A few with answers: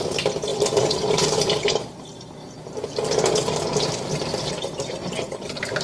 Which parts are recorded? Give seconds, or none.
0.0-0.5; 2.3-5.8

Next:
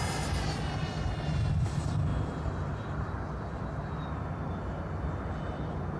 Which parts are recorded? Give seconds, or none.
0.0-2.1; 4.5-6.0

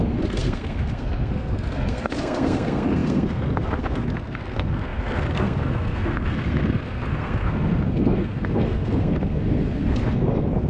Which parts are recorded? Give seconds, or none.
none

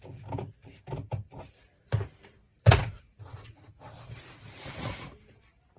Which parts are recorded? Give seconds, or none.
0.0-2.5; 4.9-5.8

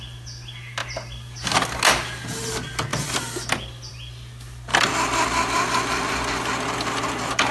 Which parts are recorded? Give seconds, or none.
0.0-7.5